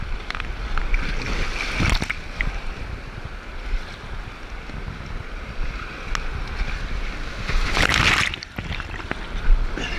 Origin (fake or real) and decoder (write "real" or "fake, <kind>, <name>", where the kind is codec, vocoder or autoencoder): real